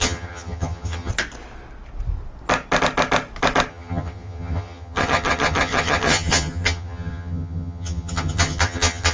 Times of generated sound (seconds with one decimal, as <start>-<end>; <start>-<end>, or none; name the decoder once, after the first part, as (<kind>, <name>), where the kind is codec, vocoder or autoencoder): 0.0-1.1 (vocoder, HiFi-GAN); 3.7-9.1